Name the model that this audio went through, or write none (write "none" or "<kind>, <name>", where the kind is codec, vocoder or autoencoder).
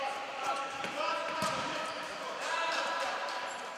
vocoder, BigVGAN v2